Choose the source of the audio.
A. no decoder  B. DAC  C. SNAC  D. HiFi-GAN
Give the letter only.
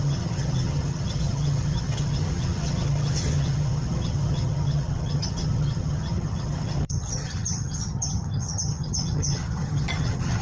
D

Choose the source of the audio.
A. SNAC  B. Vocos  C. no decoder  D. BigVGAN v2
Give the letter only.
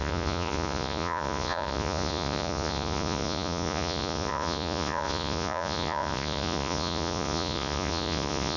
B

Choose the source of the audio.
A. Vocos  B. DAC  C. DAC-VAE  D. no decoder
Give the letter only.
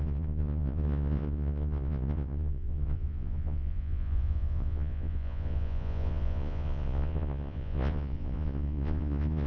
A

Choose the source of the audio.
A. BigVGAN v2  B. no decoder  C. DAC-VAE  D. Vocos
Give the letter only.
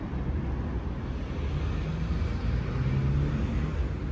B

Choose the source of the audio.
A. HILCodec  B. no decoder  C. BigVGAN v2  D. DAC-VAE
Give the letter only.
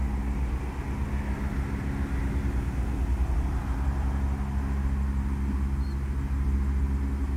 B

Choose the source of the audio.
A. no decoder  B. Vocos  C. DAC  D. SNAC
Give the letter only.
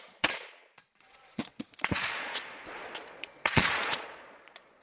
B